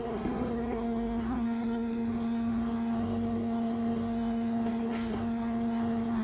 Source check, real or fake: fake